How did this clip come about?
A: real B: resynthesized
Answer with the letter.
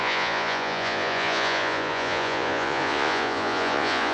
B